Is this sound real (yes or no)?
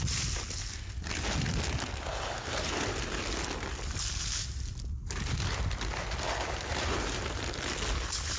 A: yes